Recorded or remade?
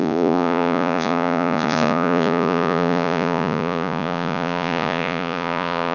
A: remade